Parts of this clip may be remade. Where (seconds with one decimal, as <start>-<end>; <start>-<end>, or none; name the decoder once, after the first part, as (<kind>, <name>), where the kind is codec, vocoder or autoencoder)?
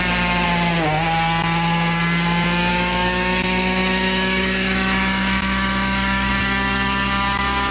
2.7-6.3 (autoencoder, DAC-VAE)